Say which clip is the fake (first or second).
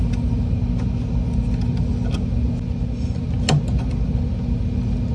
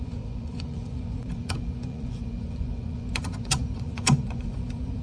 second